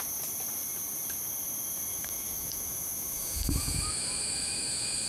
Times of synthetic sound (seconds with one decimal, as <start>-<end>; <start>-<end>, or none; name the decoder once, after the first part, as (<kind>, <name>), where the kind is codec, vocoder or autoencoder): 1.9-5.1 (autoencoder, DAC-VAE)